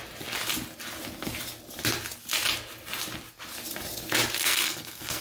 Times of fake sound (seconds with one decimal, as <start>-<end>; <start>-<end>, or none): 4.4-5.2